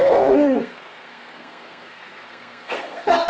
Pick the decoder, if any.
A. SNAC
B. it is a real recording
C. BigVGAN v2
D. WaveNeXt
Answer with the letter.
A